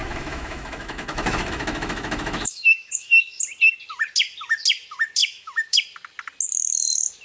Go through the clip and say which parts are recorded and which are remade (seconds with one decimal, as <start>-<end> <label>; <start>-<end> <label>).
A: 0.0-3.4 remade; 3.4-5.2 recorded; 5.2-5.8 remade; 5.8-7.2 recorded

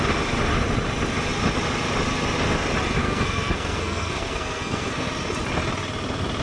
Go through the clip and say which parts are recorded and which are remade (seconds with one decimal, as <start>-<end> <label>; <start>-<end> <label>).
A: 0.0-3.0 recorded; 3.0-5.1 remade; 5.1-6.4 recorded